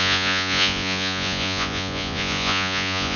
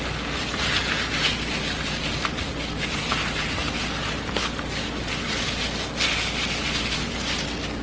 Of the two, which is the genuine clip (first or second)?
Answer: second